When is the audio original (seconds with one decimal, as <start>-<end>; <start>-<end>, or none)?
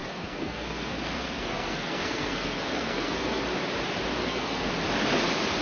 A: 3.4-4.2; 4.7-5.6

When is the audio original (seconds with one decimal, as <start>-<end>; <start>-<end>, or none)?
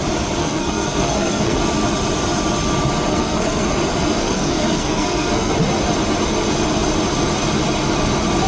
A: 0.0-0.4; 1.6-3.1; 3.7-4.2; 5.5-8.5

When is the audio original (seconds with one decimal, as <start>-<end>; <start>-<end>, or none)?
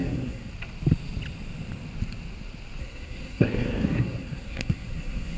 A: 0.5-2.8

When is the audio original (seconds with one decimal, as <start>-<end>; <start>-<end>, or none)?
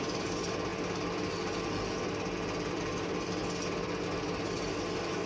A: 0.0-5.3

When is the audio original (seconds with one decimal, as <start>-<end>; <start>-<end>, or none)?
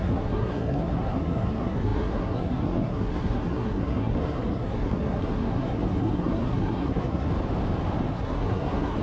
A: 7.3-8.1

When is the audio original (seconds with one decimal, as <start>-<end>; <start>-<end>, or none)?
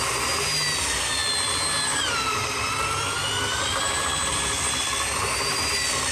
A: 0.0-6.1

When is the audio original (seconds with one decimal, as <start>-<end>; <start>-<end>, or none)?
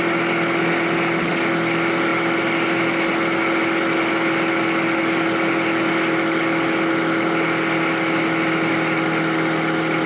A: 0.0-10.1